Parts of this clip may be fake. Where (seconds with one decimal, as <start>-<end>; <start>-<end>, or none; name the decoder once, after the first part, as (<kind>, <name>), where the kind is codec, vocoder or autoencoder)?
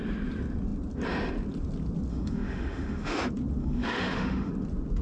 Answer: 2.1-3.2 (autoencoder, DAC-VAE); 3.6-4.5